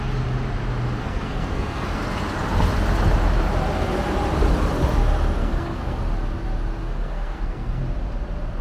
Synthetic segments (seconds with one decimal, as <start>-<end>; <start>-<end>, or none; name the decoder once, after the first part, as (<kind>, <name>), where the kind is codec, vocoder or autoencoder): 1.0-2.0 (codec, SNAC); 5.4-6.0; 6.8-7.8